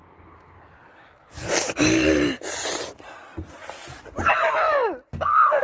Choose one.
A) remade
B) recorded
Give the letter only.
B